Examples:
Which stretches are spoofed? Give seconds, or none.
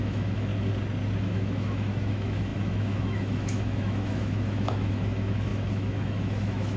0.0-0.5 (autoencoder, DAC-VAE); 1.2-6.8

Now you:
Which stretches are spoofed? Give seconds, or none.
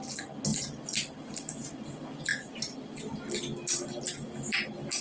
none